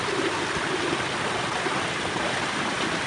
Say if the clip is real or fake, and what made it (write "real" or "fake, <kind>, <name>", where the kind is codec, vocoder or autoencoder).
real